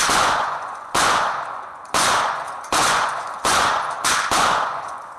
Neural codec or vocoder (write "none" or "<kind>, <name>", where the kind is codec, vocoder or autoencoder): vocoder, Vocos